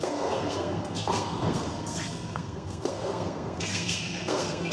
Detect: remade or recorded remade